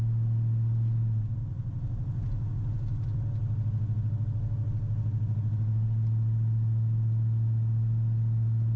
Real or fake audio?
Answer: real